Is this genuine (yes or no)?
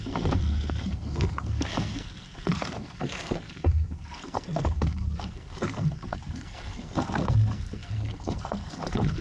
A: no